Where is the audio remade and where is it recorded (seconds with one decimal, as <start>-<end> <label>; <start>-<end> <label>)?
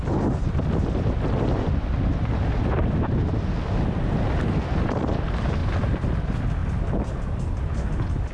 0.0-8.3 recorded